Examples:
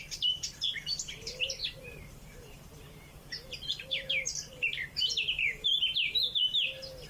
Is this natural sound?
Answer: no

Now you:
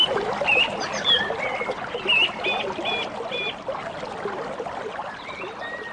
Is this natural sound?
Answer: yes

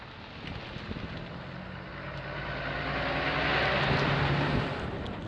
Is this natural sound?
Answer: yes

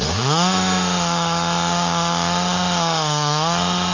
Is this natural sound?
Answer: no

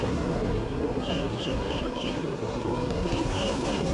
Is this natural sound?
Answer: no